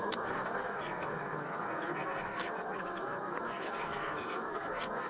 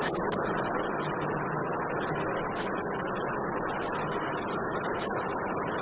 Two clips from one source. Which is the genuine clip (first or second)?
second